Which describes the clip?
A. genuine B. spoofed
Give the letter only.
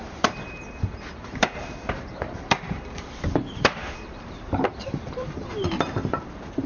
B